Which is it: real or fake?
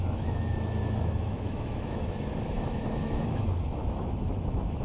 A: fake